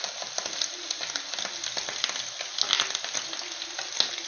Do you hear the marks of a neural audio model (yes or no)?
no